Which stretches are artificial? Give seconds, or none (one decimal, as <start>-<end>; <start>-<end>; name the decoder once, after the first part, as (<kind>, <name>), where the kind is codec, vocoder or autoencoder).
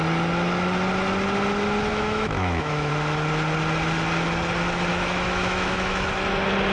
1.9-2.9 (autoencoder, DAC-VAE); 4.9-6.1